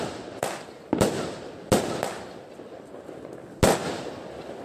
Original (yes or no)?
yes